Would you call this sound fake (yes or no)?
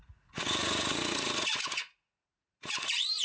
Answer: yes